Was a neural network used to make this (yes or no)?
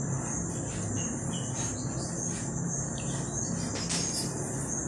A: no